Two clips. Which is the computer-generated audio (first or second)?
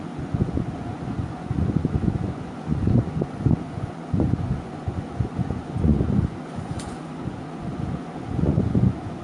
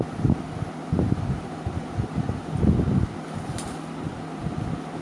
first